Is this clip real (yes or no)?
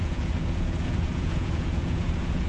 no